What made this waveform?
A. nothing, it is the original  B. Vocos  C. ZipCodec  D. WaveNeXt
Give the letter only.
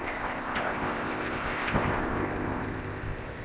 C